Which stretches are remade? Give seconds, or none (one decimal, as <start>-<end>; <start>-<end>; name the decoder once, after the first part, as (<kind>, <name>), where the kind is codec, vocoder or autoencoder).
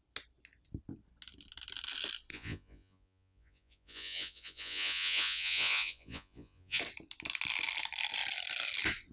2.3-6.8 (vocoder, Vocos)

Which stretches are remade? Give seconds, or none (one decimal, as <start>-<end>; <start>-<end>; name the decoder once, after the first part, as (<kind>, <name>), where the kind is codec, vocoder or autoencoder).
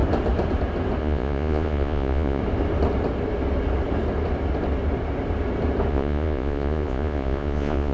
1.0-2.4 (vocoder, Vocos); 5.9-7.9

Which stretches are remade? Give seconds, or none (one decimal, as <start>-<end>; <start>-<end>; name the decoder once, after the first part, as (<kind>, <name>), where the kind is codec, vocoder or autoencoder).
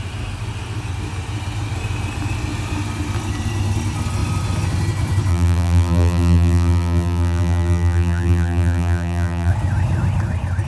5.3-9.5 (vocoder, BigVGAN v2)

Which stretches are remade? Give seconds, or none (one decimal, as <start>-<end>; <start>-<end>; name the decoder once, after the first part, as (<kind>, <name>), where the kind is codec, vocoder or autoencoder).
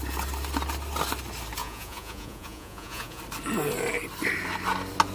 1.6-3.2 (vocoder, Vocos)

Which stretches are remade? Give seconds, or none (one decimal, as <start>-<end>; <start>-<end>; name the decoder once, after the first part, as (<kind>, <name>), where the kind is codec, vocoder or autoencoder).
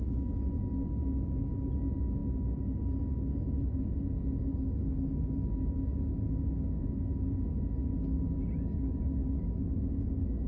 none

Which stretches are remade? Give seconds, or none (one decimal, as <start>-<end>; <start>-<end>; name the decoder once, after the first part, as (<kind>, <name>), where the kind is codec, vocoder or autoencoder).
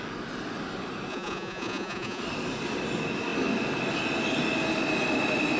1.1-2.2 (vocoder, Vocos)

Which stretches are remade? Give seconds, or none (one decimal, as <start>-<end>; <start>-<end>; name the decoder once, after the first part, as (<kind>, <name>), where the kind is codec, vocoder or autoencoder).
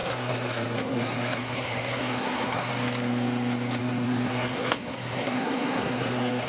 0.0-2.7 (codec, SNAC); 3.8-6.5